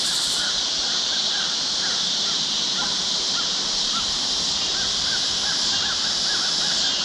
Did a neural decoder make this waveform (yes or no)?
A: yes